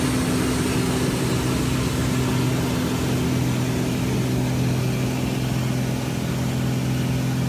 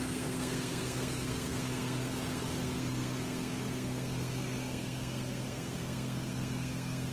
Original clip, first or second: first